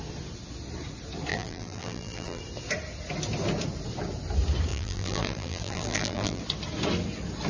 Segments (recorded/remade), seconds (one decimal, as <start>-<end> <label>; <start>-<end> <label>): 0.0-1.3 recorded; 1.3-2.4 remade; 2.4-4.7 recorded; 4.7-6.4 remade; 6.4-7.5 recorded